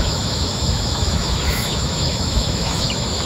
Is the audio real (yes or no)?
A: no